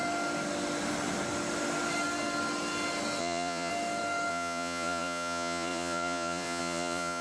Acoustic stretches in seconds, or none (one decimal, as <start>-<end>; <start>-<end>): 0.0-3.2; 3.7-4.3